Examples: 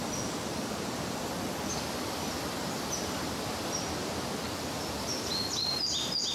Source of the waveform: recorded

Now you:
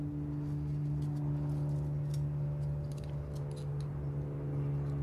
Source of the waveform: recorded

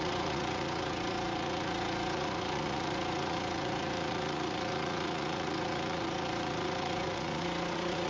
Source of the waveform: remade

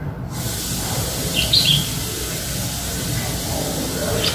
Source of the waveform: recorded